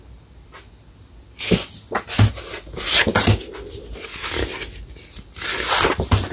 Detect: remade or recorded recorded